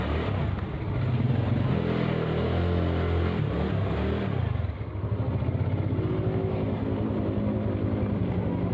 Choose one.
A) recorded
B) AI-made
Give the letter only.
A